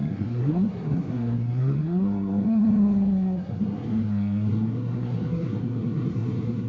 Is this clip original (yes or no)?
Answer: no